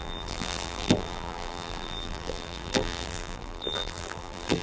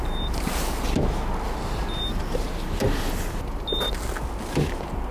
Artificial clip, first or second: first